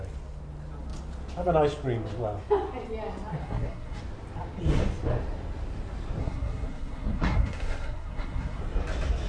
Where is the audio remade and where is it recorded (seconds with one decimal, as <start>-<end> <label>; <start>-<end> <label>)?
0.0-3.4 recorded; 3.4-4.0 remade; 4.0-6.2 recorded; 6.2-8.6 remade; 8.6-9.3 recorded